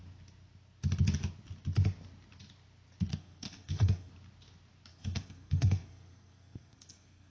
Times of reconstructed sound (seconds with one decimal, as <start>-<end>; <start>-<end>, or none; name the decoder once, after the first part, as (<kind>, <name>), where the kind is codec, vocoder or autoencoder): 3.1-4.1 (codec, SNAC); 4.9-7.3